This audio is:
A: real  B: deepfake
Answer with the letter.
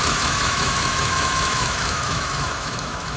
B